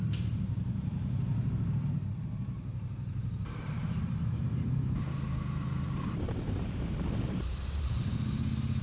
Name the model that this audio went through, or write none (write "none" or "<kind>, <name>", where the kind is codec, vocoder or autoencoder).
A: vocoder, BigVGAN v2